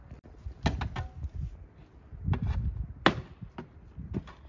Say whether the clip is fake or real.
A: real